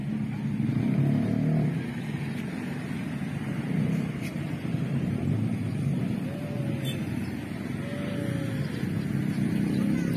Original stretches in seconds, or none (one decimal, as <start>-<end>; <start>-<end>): 0.0-4.3; 6.0-10.2